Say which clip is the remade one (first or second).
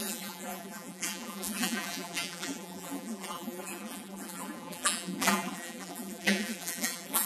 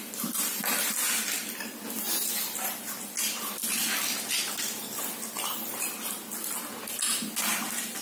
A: first